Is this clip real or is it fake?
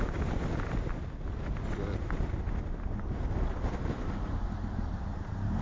real